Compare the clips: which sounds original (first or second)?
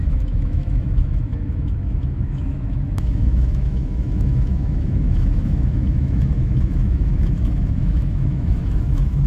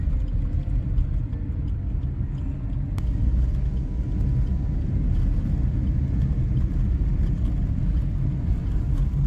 second